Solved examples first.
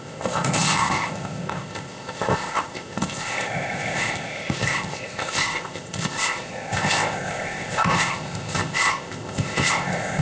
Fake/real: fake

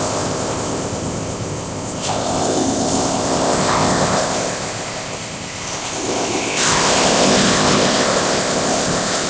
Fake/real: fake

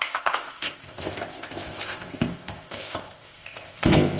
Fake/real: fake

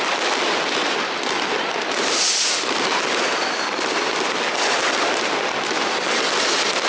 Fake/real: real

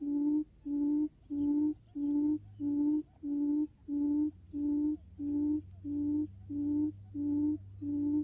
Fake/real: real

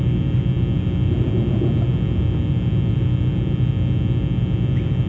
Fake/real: real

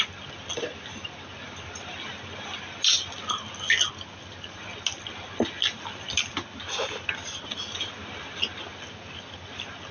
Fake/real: real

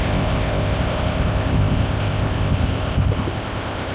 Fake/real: fake